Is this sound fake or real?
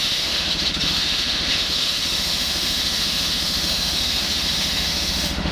fake